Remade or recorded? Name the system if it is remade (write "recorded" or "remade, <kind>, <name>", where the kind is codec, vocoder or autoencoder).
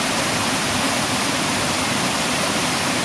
recorded